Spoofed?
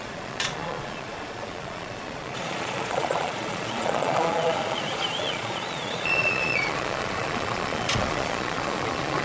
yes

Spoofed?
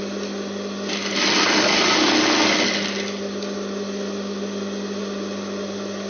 no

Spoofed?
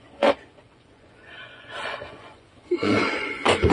yes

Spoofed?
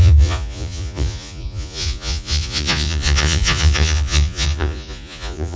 yes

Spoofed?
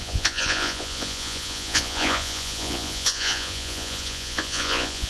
yes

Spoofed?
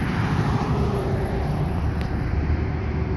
no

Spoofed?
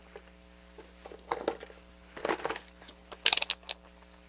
no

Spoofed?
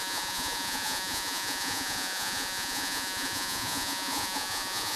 yes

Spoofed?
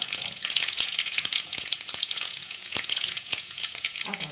yes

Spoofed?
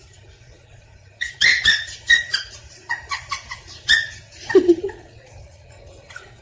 yes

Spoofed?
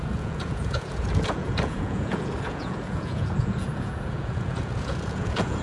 yes